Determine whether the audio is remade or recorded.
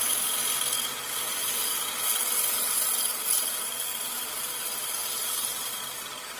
recorded